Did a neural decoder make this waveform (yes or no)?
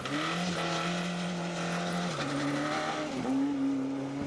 no